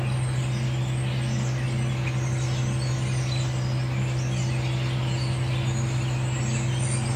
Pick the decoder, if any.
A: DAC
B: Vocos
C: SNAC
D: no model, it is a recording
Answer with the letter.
D